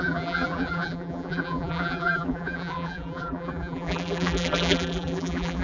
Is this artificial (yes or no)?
yes